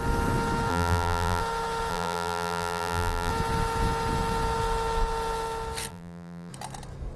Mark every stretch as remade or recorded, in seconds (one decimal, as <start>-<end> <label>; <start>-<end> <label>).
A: 0.0-0.7 recorded; 0.7-1.4 remade; 1.4-1.9 recorded; 1.9-3.3 remade; 3.3-5.9 recorded; 5.9-6.5 remade; 6.5-7.2 recorded